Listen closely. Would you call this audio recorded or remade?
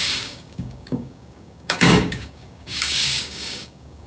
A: remade